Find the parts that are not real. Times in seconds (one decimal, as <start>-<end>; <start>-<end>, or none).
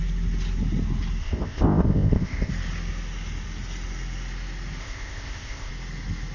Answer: 1.2-2.5; 4.8-5.7